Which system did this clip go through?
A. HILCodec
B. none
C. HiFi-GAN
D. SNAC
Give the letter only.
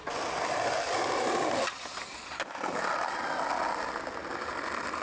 B